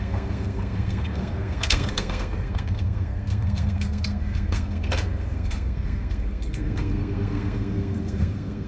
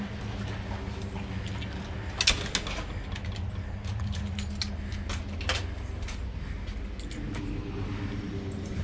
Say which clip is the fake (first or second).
first